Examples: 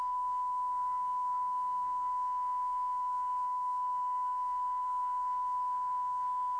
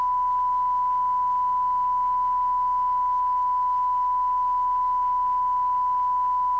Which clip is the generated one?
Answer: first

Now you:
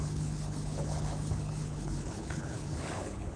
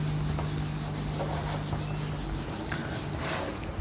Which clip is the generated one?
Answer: first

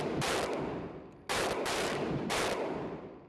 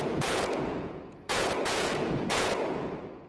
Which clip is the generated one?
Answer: second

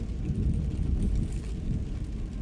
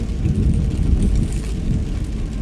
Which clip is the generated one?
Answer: first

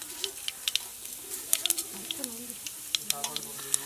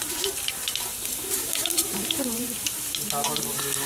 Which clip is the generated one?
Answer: second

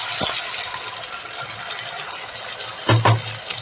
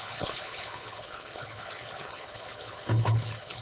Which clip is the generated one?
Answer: second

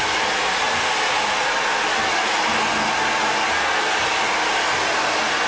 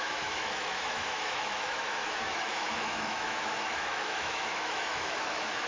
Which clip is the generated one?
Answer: second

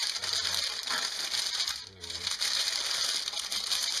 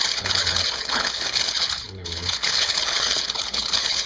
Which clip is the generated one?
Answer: second